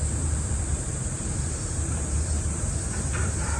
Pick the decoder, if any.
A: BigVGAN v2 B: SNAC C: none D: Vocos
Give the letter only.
A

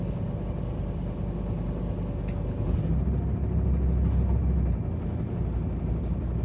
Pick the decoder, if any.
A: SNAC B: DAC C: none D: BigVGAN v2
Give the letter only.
C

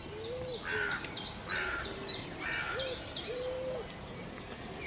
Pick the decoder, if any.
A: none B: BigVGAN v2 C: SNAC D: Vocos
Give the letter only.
A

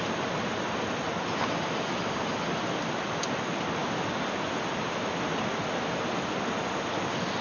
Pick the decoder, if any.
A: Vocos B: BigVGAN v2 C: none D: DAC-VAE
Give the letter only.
C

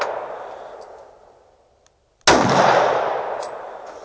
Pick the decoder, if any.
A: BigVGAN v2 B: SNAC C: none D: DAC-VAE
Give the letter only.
C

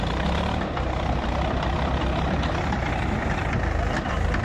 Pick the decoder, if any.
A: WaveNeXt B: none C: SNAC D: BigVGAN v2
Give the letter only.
D